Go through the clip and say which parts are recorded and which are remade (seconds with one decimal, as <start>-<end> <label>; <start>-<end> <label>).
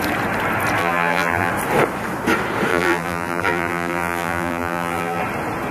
0.0-0.8 recorded; 0.8-1.5 remade; 1.5-2.7 recorded; 2.7-5.2 remade; 5.2-5.7 recorded